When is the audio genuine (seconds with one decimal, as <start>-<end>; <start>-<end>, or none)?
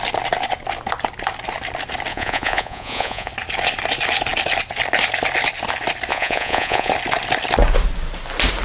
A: 0.0-2.1; 3.3-6.1; 6.9-8.6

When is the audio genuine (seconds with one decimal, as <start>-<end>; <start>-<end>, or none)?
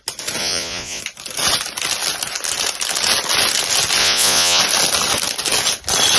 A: 0.0-0.4; 1.0-4.0; 4.6-6.2